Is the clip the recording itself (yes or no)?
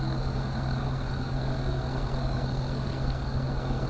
no